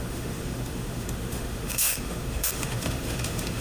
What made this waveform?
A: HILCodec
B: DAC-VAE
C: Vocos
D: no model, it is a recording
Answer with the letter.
B